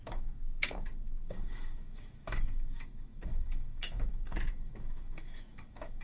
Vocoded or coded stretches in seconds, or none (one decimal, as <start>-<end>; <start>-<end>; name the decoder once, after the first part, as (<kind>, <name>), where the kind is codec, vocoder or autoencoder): 0.0-6.0 (autoencoder, DAC-VAE)